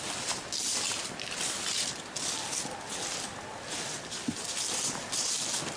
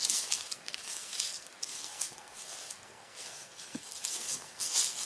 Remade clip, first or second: second